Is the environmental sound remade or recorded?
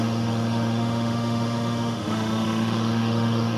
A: remade